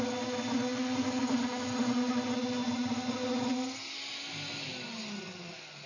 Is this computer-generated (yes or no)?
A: no